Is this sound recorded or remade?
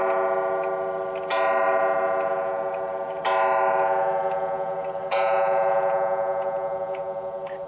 recorded